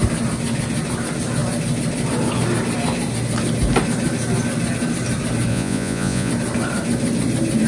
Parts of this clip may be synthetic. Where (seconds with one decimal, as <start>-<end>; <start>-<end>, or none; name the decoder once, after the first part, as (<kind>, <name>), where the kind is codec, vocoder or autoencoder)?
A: 5.5-6.3 (vocoder, Vocos)